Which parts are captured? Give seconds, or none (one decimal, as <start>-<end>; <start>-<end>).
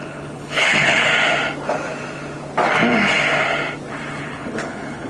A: 1.1-4.2